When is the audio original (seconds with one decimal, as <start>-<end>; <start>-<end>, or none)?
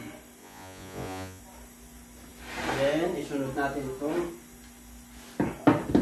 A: 0.0-0.4; 1.4-6.0